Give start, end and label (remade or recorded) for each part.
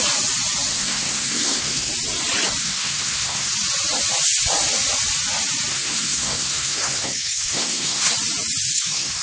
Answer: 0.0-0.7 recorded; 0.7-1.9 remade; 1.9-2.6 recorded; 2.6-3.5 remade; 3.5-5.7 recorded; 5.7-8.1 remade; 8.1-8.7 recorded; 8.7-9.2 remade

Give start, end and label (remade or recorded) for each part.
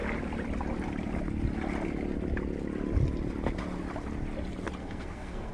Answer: 0.0-4.8 recorded; 4.8-5.5 remade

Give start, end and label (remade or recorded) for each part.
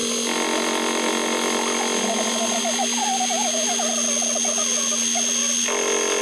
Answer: 0.0-6.2 recorded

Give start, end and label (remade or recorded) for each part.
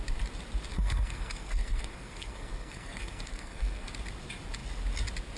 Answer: 0.0-0.7 recorded; 0.7-3.9 remade; 3.9-5.4 recorded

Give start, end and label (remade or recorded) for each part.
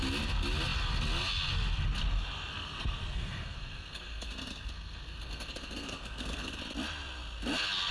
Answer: 0.0-2.5 recorded; 2.5-6.6 remade; 6.6-7.9 recorded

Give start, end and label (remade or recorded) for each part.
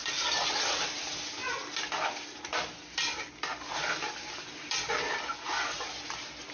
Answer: 0.0-6.5 recorded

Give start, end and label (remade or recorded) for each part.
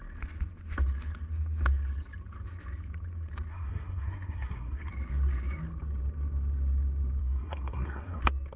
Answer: 0.0-3.5 recorded; 3.5-4.9 remade; 4.9-7.2 recorded; 7.2-8.2 remade; 8.2-8.6 recorded